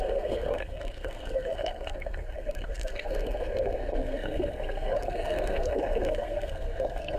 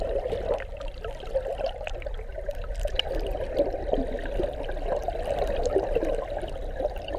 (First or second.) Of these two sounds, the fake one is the first